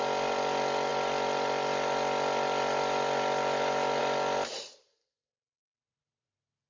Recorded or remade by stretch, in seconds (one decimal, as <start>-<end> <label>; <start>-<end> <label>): 0.0-6.7 recorded